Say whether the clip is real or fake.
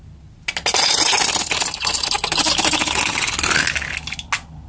real